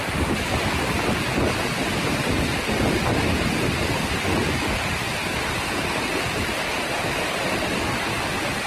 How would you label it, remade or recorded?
recorded